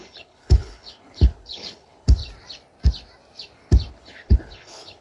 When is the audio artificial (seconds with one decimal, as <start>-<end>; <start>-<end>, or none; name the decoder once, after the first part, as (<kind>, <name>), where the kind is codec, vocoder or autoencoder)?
0.0-2.2 (codec, HILCodec); 3.9-5.0